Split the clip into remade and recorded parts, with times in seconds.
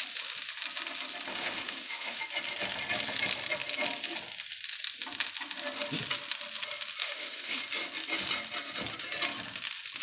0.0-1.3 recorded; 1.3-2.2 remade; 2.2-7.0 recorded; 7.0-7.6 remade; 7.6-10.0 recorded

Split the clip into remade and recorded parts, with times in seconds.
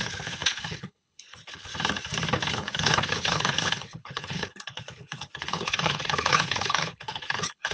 0.0-1.7 remade; 1.7-2.5 recorded; 2.5-7.7 remade